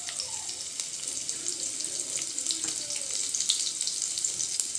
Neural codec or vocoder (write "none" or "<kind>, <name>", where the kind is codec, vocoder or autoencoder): none